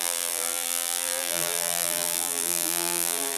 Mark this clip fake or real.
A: fake